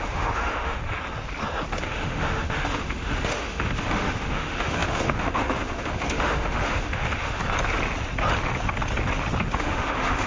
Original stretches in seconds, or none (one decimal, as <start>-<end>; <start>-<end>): 0.8-1.8; 7.4-9.4